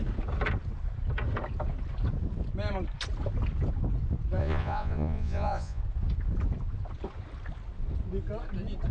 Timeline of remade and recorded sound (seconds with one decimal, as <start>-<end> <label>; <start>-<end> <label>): 0.0-4.4 recorded; 4.4-5.8 remade; 5.8-8.9 recorded